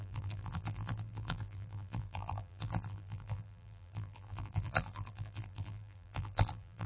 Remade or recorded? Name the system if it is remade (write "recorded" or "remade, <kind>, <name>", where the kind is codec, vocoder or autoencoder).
remade, vocoder, BigVGAN v2